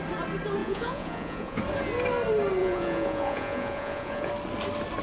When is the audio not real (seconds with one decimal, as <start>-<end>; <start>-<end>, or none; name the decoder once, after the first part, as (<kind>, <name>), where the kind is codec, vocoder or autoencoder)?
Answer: 0.6-1.6 (vocoder, Vocos); 2.6-4.3